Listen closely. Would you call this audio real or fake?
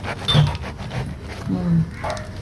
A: real